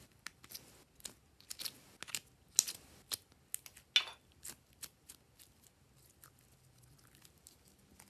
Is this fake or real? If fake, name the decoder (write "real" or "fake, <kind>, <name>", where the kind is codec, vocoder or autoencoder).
real